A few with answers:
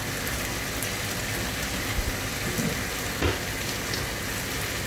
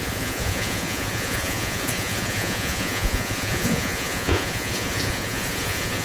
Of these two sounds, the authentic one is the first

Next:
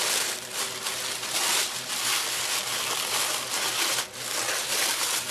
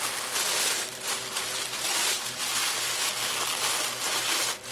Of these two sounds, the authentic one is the second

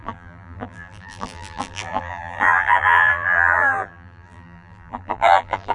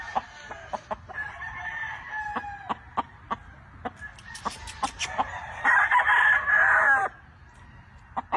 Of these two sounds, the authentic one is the second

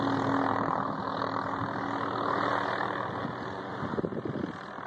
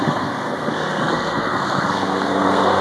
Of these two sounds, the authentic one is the first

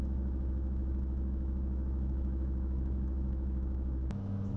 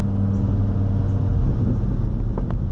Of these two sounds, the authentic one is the second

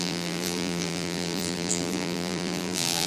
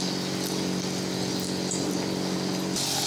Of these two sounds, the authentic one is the second